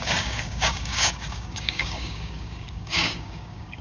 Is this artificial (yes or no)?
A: yes